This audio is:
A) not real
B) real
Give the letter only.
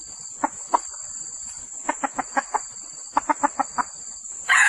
B